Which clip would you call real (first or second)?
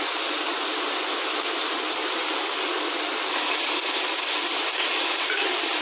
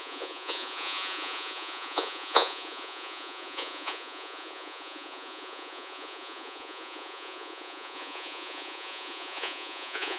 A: first